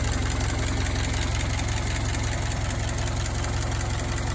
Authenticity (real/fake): real